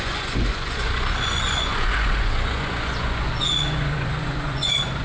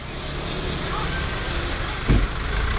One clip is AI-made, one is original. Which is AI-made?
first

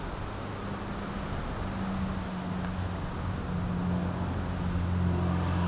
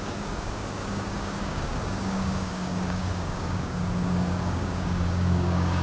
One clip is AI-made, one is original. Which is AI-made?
second